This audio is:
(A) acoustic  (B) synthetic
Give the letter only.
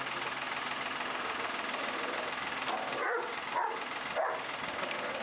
A